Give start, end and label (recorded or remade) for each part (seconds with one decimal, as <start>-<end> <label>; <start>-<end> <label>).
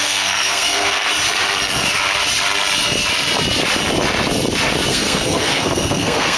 0.0-1.1 remade; 1.1-4.9 recorded; 4.9-6.4 remade